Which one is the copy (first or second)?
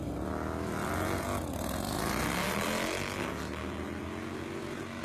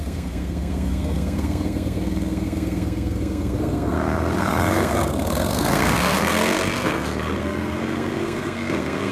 second